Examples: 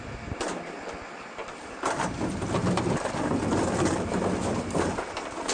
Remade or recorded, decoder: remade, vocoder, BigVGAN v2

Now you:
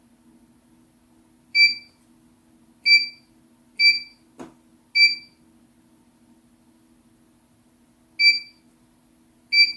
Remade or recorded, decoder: recorded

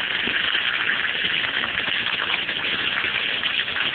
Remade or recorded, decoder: recorded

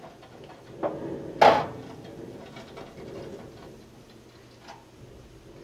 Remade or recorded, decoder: recorded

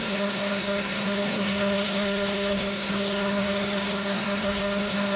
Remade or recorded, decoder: remade, codec, SNAC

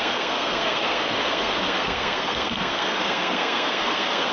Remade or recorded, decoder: remade, codec, SNAC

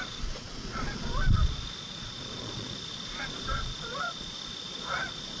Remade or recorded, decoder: remade, vocoder, Vocos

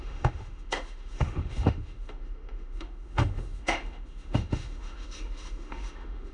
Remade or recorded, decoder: remade, autoencoder, DAC-VAE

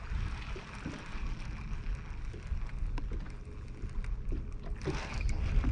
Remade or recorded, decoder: recorded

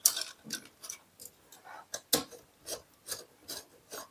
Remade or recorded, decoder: recorded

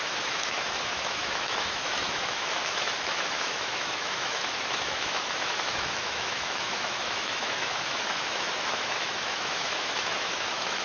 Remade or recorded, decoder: remade, autoencoder, DAC-VAE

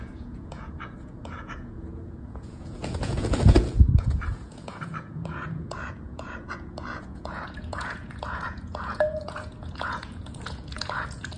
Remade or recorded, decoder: remade, vocoder, Vocos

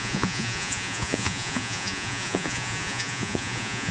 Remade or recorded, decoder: remade, vocoder, Vocos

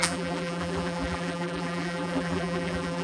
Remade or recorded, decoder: remade, vocoder, BigVGAN v2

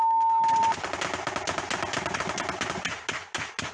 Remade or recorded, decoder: recorded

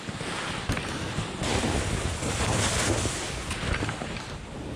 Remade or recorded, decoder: recorded